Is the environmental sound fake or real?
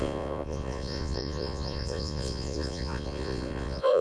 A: fake